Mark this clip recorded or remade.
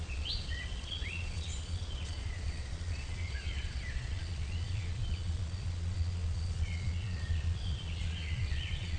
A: remade